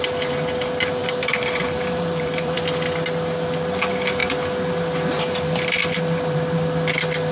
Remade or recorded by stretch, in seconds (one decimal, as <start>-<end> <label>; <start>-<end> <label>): 0.0-1.0 recorded; 1.0-2.6 remade; 2.6-7.3 recorded